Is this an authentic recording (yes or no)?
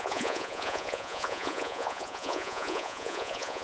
no